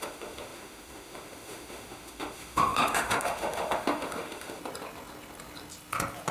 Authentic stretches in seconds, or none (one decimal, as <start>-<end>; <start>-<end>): 4.6-6.3